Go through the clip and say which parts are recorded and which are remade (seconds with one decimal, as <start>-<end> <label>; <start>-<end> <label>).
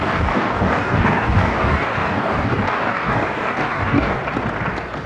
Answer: 0.0-4.2 remade; 4.2-5.1 recorded